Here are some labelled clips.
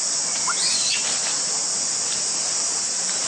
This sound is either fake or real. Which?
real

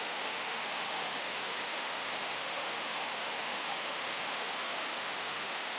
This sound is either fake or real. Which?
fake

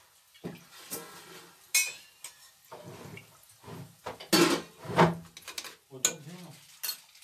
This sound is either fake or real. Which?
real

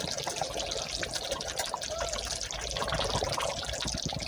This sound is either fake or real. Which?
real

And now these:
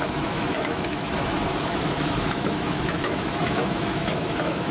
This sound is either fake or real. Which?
fake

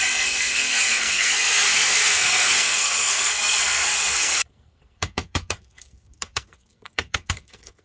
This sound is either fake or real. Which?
fake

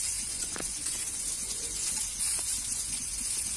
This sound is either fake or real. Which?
fake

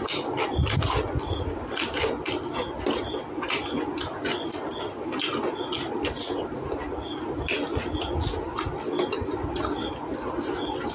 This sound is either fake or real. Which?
real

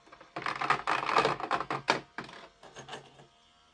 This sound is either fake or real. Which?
real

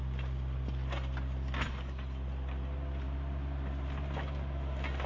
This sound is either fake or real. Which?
real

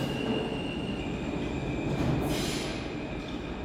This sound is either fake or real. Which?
real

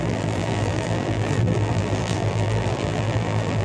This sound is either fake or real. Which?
fake